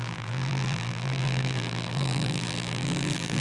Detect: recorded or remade remade